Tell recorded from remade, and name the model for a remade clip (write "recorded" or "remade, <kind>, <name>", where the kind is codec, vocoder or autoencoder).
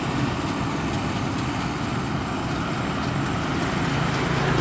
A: recorded